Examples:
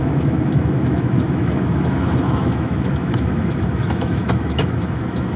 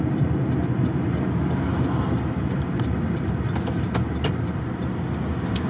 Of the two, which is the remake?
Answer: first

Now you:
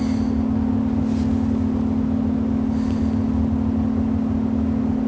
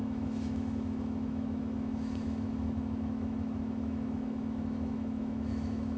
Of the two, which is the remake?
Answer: second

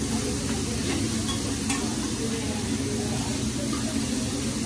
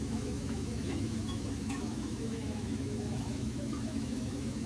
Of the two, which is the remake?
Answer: second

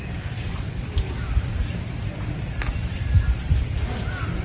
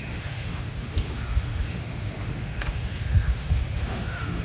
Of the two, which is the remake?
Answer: second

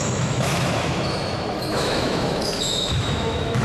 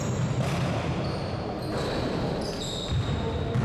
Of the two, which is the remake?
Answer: first